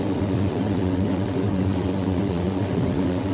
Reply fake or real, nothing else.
fake